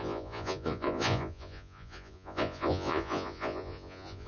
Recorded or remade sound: remade